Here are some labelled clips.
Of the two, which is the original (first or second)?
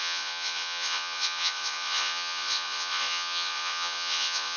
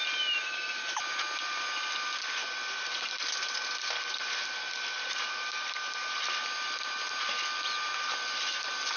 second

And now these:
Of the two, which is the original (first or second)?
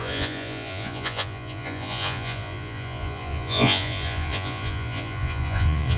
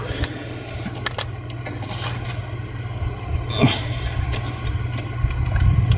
second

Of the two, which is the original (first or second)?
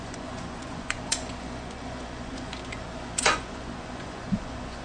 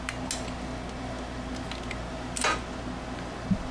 second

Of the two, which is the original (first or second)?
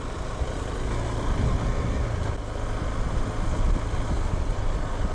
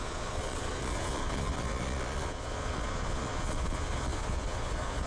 first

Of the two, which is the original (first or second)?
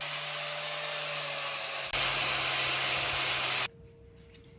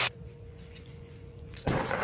first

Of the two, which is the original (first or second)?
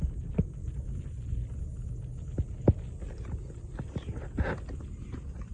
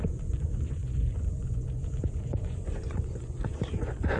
first